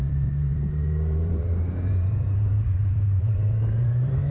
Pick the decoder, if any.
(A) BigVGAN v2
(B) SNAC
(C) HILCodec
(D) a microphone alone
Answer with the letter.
A